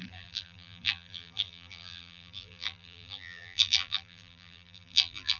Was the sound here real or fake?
fake